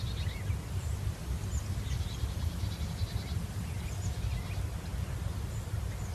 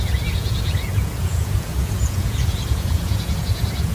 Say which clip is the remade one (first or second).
second